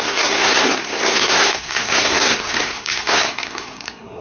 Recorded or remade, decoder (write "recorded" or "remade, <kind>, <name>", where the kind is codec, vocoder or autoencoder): remade, codec, SNAC